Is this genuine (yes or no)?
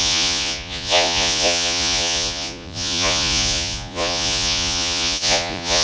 no